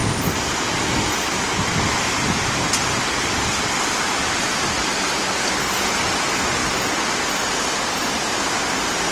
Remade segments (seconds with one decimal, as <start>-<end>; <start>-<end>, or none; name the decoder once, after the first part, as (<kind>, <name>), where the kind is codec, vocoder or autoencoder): none